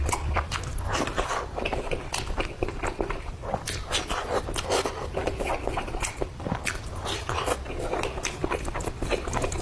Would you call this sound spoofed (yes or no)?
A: no